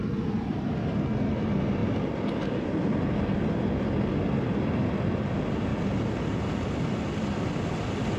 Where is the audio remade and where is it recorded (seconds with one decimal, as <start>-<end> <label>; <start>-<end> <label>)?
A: 0.0-8.2 recorded